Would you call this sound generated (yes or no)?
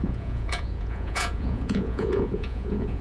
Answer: yes